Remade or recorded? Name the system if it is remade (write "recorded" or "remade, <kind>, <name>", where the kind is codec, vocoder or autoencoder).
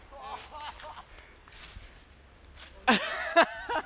recorded